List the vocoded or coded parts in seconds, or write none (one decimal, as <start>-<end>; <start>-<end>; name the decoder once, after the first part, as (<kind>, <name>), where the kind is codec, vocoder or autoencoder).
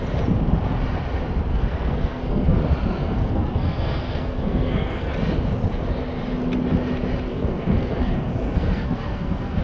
1.5-2.6 (codec, SNAC); 3.0-5.1; 7.3-9.6